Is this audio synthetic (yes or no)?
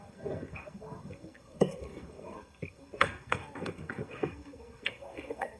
yes